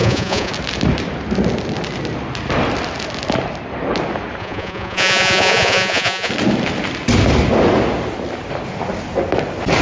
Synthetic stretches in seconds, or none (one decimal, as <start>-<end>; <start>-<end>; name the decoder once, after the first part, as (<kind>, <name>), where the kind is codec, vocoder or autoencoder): 0.0-0.5 (vocoder, Vocos); 4.4-6.3